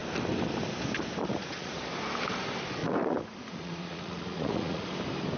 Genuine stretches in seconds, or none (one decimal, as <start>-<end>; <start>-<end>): 0.0-1.3; 1.8-2.8; 4.8-5.4